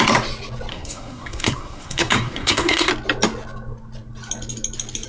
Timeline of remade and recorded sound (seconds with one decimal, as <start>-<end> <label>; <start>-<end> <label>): 0.0-0.7 recorded; 0.7-2.9 remade; 2.9-5.1 recorded